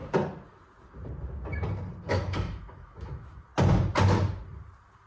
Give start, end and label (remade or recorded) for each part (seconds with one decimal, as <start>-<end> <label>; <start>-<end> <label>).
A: 0.0-2.1 recorded; 2.1-3.5 remade; 3.5-5.1 recorded